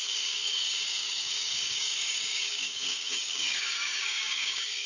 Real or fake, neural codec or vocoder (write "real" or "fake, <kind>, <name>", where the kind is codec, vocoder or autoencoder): fake, codec, DAC